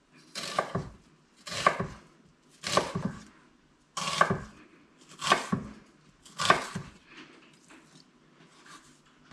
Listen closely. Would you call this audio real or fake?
real